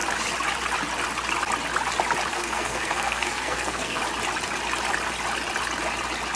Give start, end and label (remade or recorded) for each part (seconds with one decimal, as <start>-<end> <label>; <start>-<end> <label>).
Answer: 0.0-2.3 recorded; 2.3-4.0 remade; 4.0-6.4 recorded